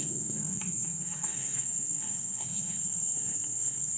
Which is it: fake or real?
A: fake